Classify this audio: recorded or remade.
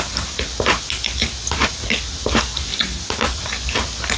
recorded